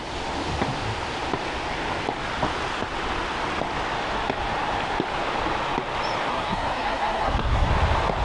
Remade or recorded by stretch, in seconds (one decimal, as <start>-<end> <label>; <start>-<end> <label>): 0.0-6.3 recorded; 6.3-7.7 remade; 7.7-8.2 recorded